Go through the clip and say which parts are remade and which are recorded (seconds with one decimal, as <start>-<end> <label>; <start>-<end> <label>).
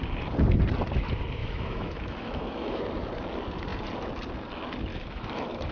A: 0.0-1.4 recorded; 1.4-2.8 remade; 2.8-4.9 recorded; 4.9-5.7 remade